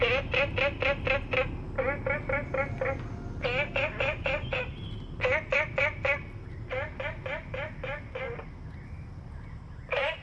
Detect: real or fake real